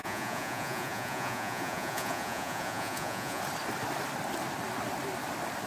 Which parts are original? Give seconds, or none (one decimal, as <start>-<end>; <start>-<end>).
3.4-5.7